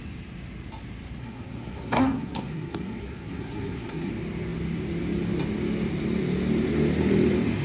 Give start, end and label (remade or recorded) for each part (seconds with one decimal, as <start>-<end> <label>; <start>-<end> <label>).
0.0-1.2 recorded; 1.2-4.1 remade; 4.1-7.6 recorded